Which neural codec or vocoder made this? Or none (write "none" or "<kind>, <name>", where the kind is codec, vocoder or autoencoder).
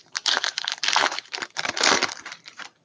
vocoder, BigVGAN v2